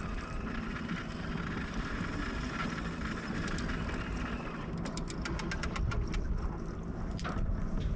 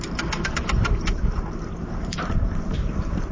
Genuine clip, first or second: first